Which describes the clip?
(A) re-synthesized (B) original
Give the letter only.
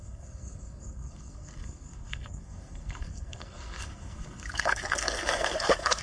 A